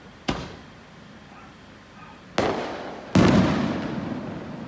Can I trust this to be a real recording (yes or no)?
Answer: yes